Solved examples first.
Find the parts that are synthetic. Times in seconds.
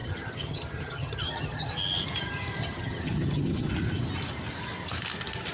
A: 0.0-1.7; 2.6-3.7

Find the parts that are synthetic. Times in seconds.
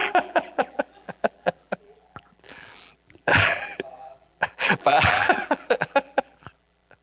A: 0.0-7.0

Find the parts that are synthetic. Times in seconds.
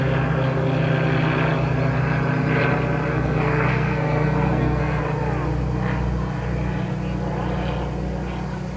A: 3.1-5.0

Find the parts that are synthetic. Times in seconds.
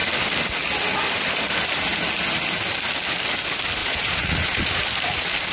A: 3.8-4.8